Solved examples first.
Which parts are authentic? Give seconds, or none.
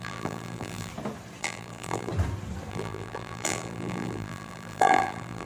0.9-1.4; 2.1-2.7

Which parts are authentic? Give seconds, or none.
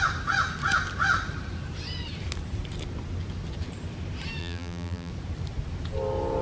0.0-4.4; 5.1-6.4